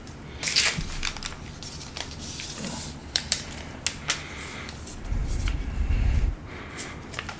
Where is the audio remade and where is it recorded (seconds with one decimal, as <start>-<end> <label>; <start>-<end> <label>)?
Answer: 0.0-3.0 recorded; 3.0-3.6 remade; 3.6-5.2 recorded; 5.2-6.6 remade; 6.6-7.4 recorded